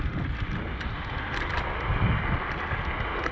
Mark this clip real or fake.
real